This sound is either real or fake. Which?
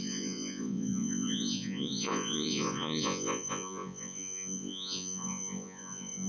fake